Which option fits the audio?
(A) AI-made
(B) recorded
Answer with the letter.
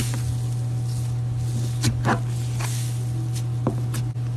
B